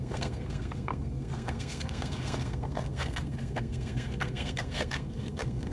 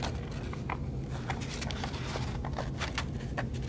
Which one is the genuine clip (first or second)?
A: second